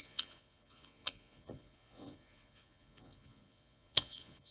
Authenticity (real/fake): fake